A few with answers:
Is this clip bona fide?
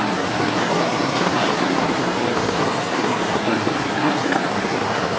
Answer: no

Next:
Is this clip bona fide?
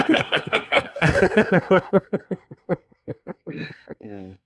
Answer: no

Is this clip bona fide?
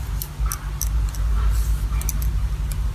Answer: yes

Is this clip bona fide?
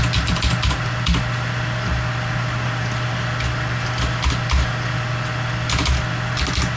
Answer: yes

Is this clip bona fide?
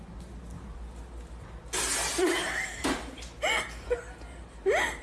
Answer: yes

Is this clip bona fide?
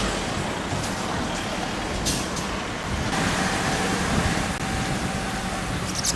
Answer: yes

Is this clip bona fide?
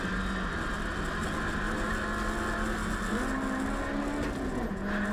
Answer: yes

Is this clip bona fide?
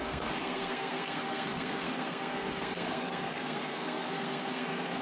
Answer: no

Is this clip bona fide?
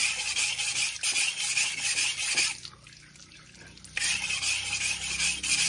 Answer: yes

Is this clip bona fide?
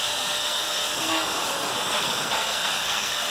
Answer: no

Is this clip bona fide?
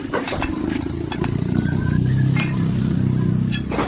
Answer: yes